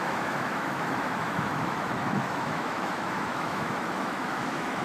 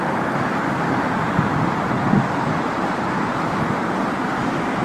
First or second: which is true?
second